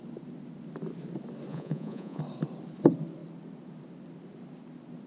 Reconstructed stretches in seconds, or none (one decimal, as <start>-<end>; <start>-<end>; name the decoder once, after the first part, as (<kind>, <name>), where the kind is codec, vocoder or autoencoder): 1.5-2.2 (vocoder, Vocos)

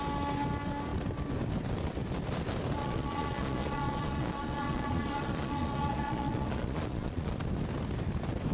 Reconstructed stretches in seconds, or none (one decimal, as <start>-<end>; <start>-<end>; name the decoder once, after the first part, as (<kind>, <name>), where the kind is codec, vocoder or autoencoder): 2.8-7.4 (vocoder, Vocos)

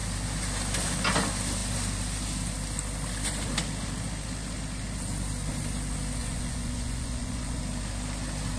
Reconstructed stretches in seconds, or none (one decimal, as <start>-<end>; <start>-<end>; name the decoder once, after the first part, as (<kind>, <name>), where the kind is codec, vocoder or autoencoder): 6.2-7.6 (vocoder, Vocos)